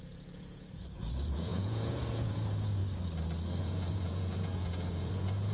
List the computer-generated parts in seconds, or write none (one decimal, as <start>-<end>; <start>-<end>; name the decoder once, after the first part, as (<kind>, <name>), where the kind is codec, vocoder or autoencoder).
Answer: 0.0-2.8 (vocoder, Vocos); 3.6-5.5